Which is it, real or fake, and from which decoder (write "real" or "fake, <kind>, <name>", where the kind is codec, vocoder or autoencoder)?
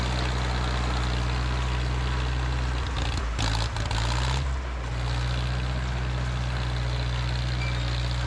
real